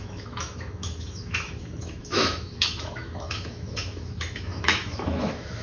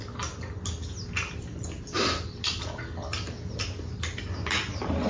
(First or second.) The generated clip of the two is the first